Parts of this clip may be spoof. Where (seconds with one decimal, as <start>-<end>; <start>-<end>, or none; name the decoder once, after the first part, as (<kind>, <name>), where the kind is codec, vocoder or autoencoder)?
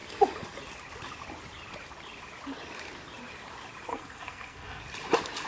3.9-4.8 (codec, SNAC)